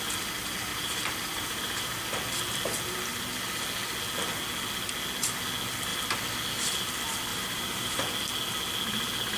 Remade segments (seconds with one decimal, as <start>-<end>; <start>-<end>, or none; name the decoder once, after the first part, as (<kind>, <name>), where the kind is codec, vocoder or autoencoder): 0.7-2.0 (vocoder, BigVGAN v2); 7.3-8.0